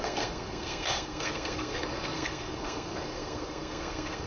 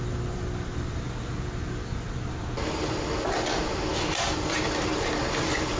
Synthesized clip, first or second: first